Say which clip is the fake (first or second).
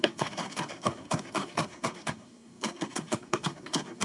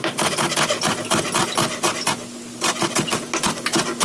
first